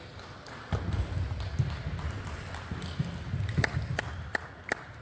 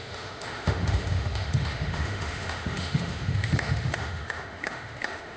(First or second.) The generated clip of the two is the second